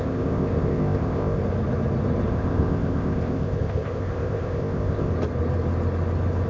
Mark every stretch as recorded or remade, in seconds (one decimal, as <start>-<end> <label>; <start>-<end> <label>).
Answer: 0.0-1.4 remade; 1.4-2.3 recorded; 2.3-5.1 remade; 5.1-6.5 recorded